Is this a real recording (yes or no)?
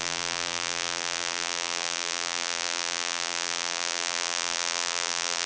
no